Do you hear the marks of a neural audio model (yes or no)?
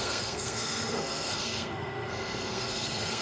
yes